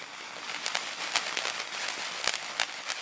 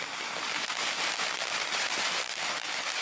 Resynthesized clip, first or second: second